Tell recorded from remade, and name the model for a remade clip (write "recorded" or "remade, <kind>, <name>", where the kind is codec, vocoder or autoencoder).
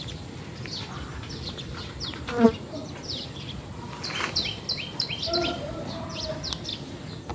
recorded